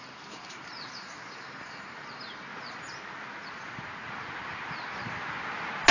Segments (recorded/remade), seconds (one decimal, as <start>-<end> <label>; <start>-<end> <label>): 0.0-2.5 remade; 2.5-5.9 recorded